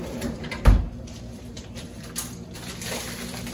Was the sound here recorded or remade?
remade